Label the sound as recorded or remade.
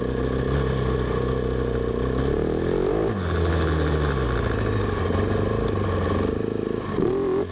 recorded